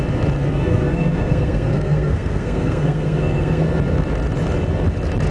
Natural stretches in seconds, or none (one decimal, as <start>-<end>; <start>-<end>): 0.0-0.5; 3.7-5.3